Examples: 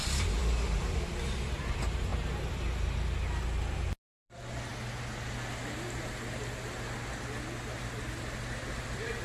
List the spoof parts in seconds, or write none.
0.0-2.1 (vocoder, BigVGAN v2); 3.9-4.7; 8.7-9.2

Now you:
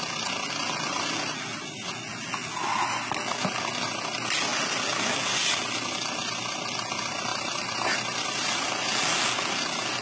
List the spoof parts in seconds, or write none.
7.3-8.7 (vocoder, BigVGAN v2)

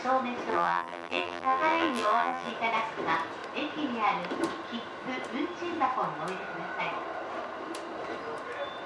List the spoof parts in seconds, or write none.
0.5-2.5 (vocoder, BigVGAN v2)

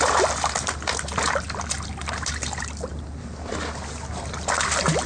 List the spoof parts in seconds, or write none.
2.9-3.6 (vocoder, BigVGAN v2)

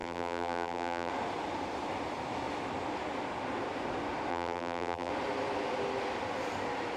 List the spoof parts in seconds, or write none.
0.0-1.1 (vocoder, BigVGAN v2); 4.3-5.1

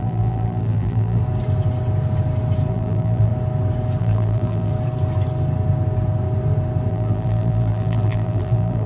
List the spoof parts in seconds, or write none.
0.0-1.2 (vocoder, BigVGAN v2); 2.7-3.3; 4.0-4.7; 6.9-8.9